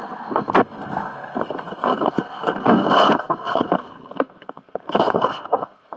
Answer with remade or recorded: remade